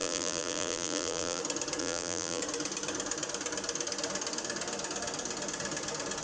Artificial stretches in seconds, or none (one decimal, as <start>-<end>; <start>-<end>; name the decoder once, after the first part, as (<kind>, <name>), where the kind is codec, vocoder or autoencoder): 0.0-1.4 (vocoder, BigVGAN v2); 1.8-2.4